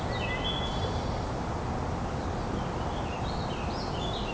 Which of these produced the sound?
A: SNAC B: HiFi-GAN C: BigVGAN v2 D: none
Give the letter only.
D